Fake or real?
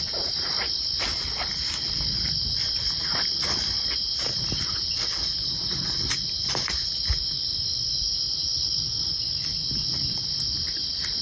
real